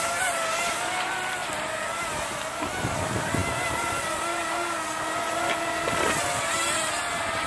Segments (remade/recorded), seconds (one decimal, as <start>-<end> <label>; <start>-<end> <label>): 0.0-7.5 recorded